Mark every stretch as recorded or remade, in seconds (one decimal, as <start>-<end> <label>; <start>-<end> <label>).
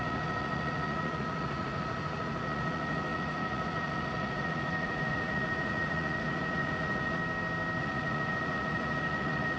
0.0-7.2 remade; 7.2-7.8 recorded; 7.8-9.6 remade